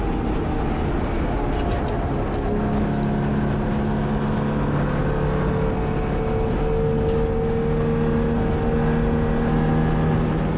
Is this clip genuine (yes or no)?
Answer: yes